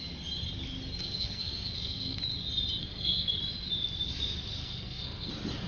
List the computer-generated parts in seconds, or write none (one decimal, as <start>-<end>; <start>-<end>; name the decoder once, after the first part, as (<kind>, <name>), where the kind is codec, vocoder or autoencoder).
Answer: 1.0-2.2 (codec, SNAC); 2.8-3.4; 4.6-5.3